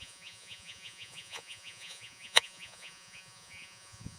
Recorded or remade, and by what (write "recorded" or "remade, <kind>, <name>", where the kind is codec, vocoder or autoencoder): remade, vocoder, Vocos